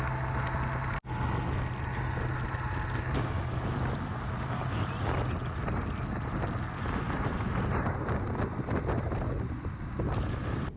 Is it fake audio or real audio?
real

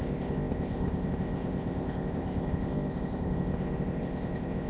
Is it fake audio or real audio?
fake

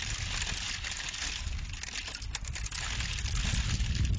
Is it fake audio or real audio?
real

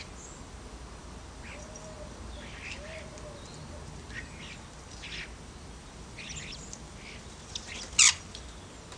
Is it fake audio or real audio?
real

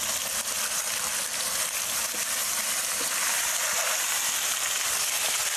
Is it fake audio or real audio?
fake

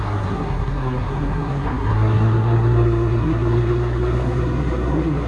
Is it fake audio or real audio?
fake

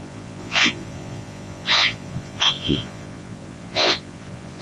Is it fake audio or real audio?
fake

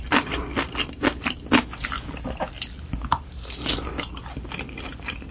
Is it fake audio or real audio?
real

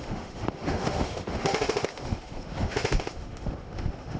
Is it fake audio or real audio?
fake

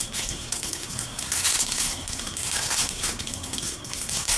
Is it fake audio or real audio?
fake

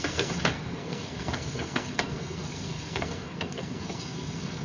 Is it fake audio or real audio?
fake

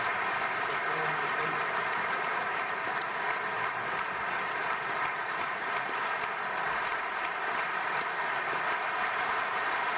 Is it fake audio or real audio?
real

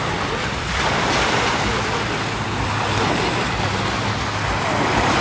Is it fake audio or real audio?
real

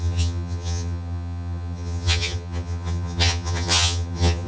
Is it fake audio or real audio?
fake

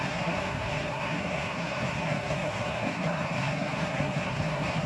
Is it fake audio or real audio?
fake